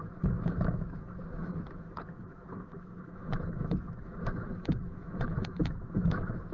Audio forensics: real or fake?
fake